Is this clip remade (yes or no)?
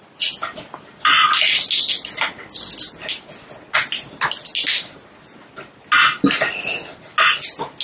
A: no